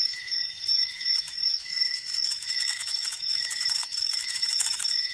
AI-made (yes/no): yes